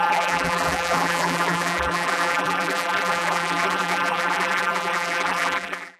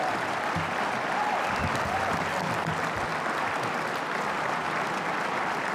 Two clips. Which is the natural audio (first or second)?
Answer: second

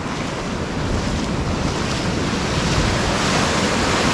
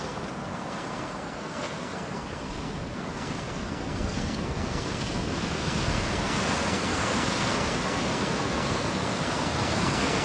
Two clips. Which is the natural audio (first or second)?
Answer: first